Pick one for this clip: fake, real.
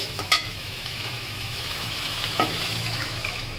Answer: fake